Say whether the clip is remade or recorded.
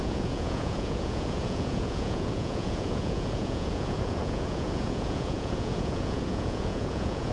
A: remade